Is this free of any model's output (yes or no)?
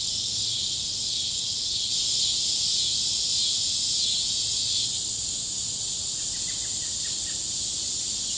yes